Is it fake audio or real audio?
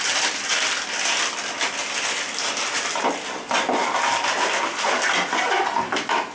real